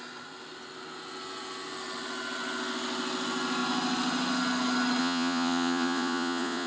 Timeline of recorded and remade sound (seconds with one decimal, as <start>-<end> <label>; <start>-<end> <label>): 0.0-5.0 recorded; 5.0-6.7 remade